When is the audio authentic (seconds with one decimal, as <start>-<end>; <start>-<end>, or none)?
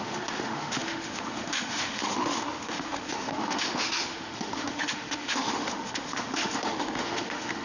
none